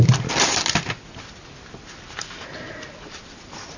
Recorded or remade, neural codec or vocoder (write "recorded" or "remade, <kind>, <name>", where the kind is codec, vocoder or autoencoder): recorded